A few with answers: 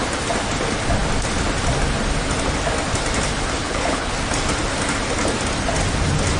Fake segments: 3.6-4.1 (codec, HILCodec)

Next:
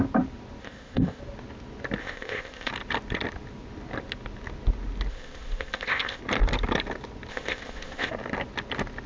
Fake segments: 0.6-1.2 (codec, ZipCodec); 2.0-2.7; 5.1-6.2; 7.3-8.1

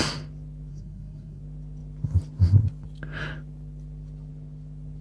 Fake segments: 0.7-1.4 (codec, SNAC)

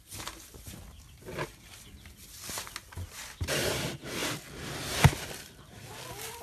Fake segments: none